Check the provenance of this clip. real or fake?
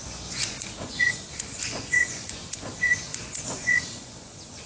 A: fake